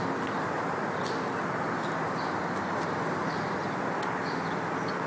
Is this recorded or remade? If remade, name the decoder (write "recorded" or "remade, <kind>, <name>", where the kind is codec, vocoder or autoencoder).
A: recorded